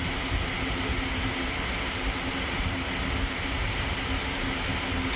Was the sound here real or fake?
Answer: real